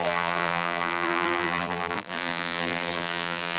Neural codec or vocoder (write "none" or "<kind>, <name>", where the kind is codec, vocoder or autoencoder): vocoder, BigVGAN v2